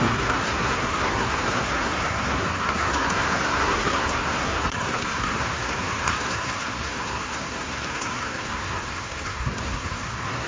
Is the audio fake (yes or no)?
yes